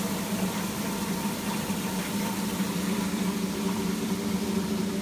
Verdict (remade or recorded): remade